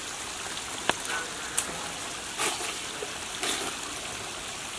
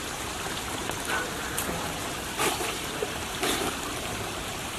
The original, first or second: first